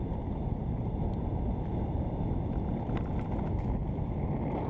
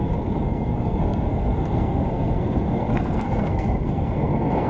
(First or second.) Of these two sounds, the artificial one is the second